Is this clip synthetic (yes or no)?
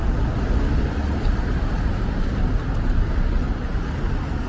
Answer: no